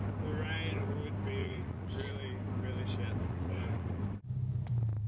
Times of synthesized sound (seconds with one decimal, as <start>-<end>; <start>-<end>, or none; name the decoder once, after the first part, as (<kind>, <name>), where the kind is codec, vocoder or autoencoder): 1.4-1.9 (vocoder, Vocos); 3.2-4.0